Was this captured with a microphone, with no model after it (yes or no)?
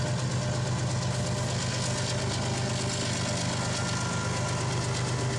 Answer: yes